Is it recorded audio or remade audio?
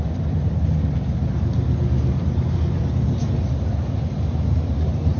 recorded